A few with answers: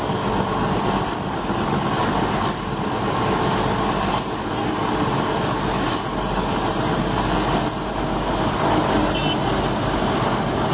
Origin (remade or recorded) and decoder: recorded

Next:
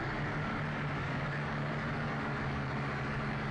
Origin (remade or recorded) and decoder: remade, codec, DAC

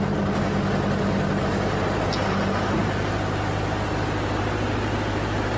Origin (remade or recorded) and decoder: recorded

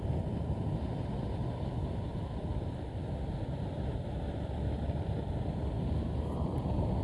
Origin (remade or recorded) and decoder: recorded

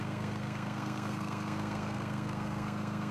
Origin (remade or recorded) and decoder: remade, codec, SNAC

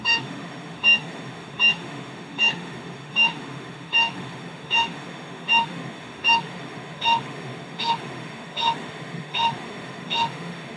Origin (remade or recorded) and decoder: remade, autoencoder, DAC-VAE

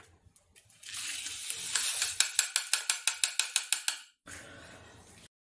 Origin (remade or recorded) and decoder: recorded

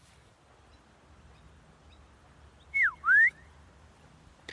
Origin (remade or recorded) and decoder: recorded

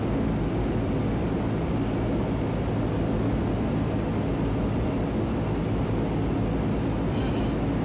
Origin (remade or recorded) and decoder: recorded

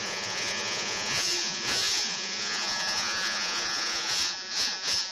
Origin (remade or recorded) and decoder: remade, vocoder, Vocos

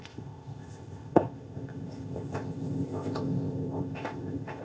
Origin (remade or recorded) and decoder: remade, codec, ZipCodec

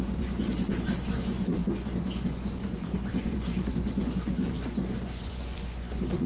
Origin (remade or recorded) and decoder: remade, vocoder, Vocos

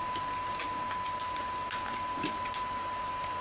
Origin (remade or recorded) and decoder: recorded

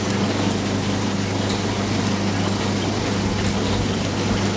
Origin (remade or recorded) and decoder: recorded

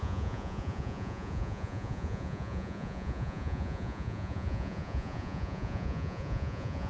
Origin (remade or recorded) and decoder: remade, vocoder, Vocos